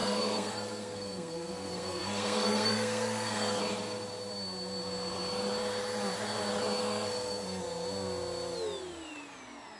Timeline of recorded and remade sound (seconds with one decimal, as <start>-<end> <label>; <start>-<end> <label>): 0.0-3.6 remade; 3.6-6.8 recorded; 6.8-7.6 remade; 7.6-9.8 recorded